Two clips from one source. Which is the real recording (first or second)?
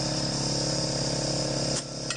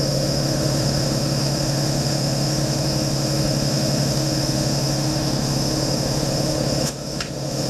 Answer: first